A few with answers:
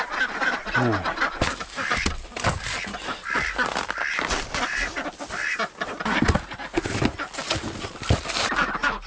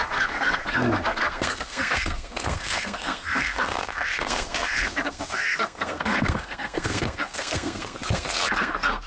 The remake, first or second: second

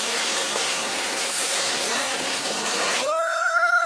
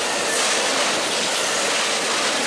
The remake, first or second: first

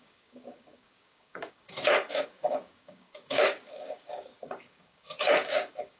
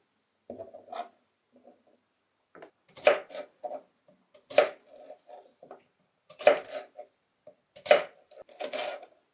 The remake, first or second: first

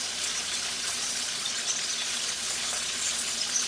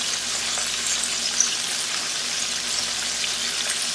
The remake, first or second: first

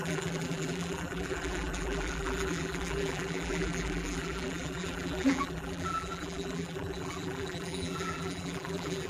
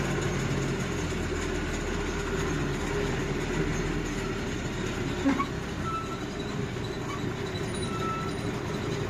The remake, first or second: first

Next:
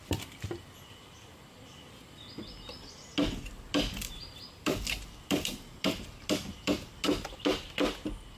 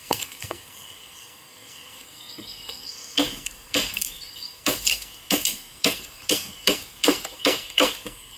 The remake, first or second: second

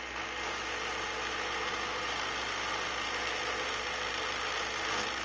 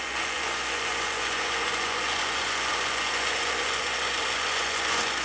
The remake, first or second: second